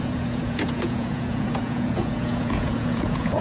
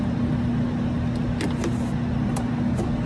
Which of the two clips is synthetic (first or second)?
first